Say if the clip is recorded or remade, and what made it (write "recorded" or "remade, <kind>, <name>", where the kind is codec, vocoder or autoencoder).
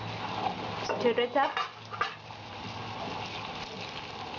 recorded